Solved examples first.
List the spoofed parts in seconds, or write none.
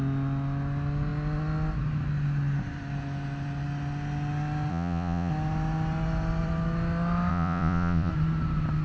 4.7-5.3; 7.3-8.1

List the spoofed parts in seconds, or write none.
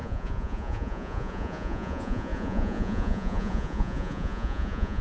0.0-5.0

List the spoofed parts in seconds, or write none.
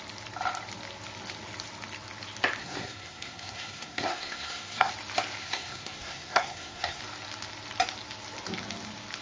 2.6-4.9; 5.4-7.0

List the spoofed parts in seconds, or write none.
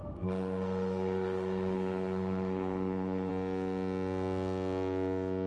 0.0-3.3